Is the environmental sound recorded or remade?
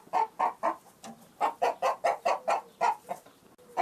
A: recorded